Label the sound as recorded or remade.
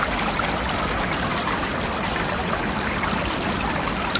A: recorded